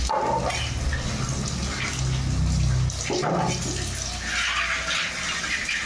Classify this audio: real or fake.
real